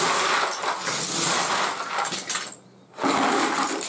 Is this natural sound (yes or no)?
yes